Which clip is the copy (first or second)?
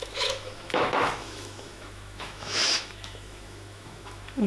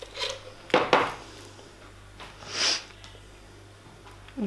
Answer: first